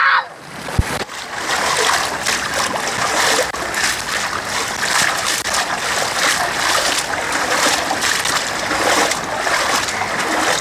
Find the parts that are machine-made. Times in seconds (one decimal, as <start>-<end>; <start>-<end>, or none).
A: none

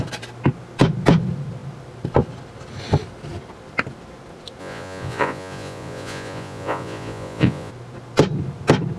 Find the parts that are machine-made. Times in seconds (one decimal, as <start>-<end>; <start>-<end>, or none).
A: 4.6-7.7

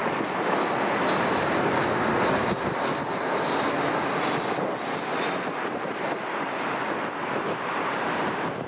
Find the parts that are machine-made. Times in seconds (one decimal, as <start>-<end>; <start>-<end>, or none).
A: none

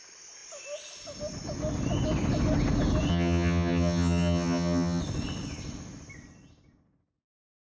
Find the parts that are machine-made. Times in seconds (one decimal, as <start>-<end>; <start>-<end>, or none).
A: 3.1-5.0

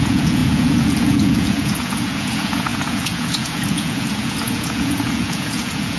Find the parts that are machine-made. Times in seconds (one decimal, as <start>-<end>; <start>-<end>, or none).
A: 0.0-6.0

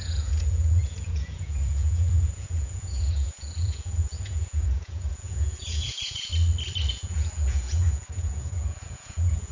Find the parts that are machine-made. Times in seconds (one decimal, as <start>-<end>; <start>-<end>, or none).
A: 0.0-6.3; 6.9-9.5